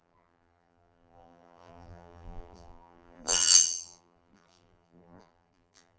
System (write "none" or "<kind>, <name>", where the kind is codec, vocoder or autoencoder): vocoder, BigVGAN v2